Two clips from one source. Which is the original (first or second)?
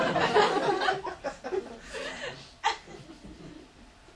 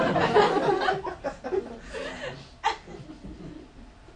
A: second